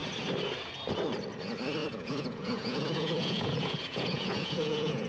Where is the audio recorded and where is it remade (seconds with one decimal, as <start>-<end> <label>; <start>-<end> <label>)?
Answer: 0.0-1.8 recorded; 1.8-5.1 remade